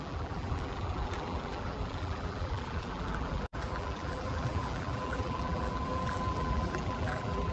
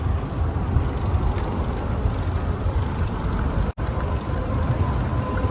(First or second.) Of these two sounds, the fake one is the first